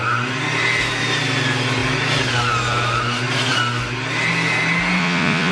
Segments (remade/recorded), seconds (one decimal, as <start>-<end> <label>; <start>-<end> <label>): 0.0-5.0 recorded; 5.0-5.5 remade